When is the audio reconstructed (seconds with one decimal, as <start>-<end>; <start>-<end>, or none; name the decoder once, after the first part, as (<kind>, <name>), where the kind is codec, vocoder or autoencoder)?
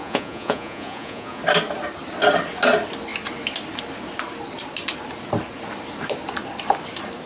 0.0-1.4 (vocoder, Vocos)